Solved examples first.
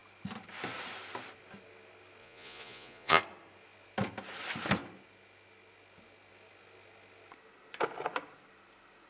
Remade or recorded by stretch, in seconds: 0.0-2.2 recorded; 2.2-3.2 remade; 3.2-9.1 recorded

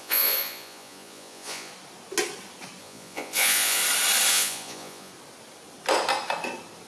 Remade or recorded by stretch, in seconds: 0.0-1.7 remade; 1.7-2.8 recorded; 2.8-3.8 remade; 3.8-4.3 recorded; 4.3-5.1 remade; 5.1-6.9 recorded

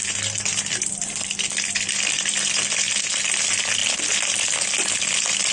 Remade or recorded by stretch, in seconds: 0.0-5.5 recorded

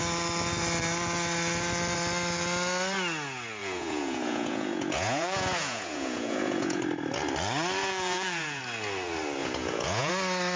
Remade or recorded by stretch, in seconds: 0.0-3.6 recorded; 3.6-6.8 remade; 6.8-7.8 recorded; 7.8-8.6 remade; 8.6-9.4 recorded; 9.4-10.1 remade; 10.1-10.6 recorded

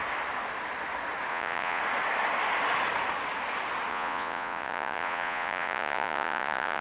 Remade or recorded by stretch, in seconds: 0.0-1.3 recorded; 1.3-1.8 remade; 1.8-3.9 recorded; 3.9-6.8 remade

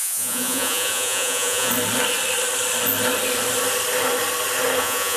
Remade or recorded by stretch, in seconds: 0.0-1.7 remade; 1.7-4.8 recorded; 4.8-5.2 remade

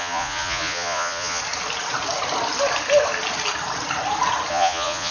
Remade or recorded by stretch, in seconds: 0.0-1.4 remade; 1.4-4.5 recorded; 4.5-5.1 remade

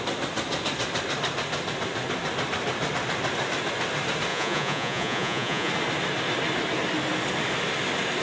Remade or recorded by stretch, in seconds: 0.0-4.3 recorded; 4.3-5.7 remade; 5.7-8.2 recorded